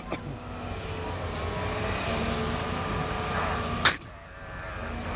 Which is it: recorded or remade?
recorded